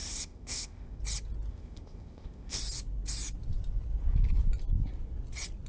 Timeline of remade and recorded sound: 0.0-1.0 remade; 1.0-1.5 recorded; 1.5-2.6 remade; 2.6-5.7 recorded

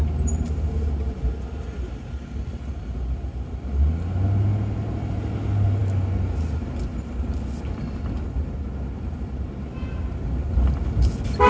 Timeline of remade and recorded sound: 0.0-11.5 recorded

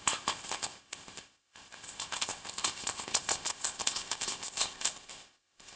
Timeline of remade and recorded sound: 0.0-5.8 remade